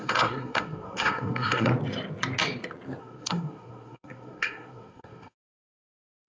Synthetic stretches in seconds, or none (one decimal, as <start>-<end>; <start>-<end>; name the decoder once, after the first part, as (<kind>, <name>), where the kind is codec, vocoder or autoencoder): 0.0-1.7 (codec, SNAC); 3.0-6.3